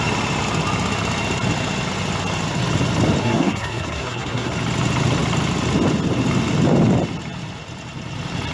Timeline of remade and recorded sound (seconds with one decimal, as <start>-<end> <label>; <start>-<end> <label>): 0.0-3.2 recorded; 3.2-4.5 remade; 4.5-8.5 recorded